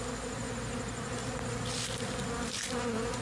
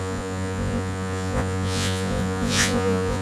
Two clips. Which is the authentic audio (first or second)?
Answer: first